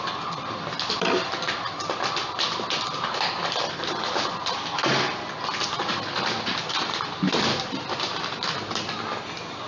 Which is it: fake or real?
real